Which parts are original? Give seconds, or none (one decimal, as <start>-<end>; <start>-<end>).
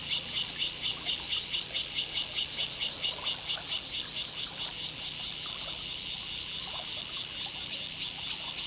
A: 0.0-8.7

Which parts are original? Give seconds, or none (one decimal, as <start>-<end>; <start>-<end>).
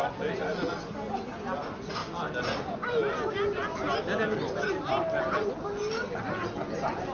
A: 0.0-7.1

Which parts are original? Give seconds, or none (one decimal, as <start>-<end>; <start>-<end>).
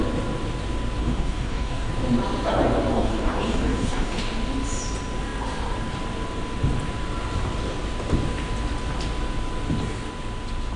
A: 0.0-1.0; 1.9-2.9; 4.2-10.8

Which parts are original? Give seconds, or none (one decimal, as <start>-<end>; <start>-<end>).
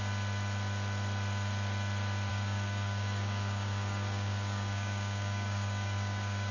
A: 0.0-2.3